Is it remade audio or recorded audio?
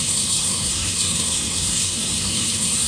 remade